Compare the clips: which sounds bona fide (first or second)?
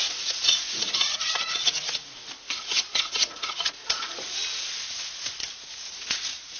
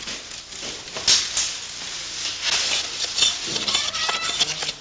second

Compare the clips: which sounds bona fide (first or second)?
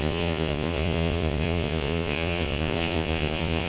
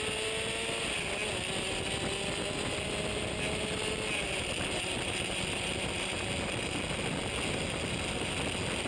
second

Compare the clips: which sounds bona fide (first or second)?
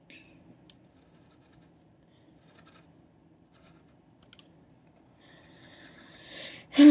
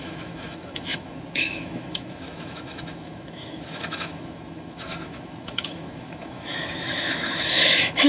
first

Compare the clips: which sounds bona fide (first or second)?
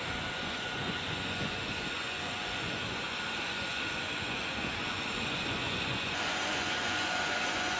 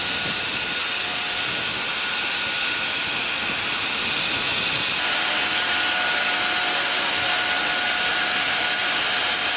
second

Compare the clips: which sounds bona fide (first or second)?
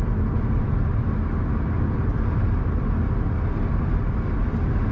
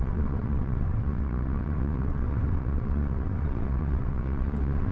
first